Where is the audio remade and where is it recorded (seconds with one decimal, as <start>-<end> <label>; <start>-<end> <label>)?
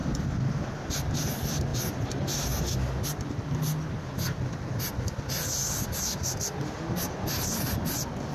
0.0-8.3 recorded